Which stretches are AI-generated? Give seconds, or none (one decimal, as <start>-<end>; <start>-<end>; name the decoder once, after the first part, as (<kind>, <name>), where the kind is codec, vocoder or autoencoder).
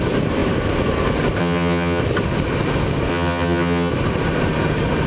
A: 1.4-2.0 (vocoder, HiFi-GAN); 3.1-3.9